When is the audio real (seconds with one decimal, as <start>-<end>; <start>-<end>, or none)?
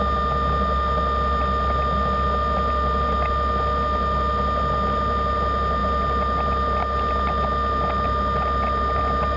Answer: 0.0-9.4